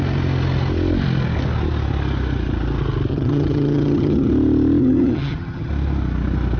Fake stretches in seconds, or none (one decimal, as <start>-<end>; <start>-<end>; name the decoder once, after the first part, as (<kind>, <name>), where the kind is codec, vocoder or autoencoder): 3.1-4.3 (vocoder, HiFi-GAN); 4.8-5.7